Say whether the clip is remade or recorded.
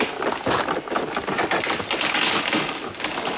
recorded